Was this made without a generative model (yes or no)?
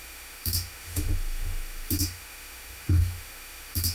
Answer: no